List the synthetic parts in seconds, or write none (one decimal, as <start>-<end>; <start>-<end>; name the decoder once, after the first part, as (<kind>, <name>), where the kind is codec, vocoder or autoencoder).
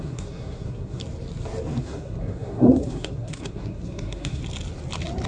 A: 0.0-1.0 (codec, SNAC); 1.8-4.4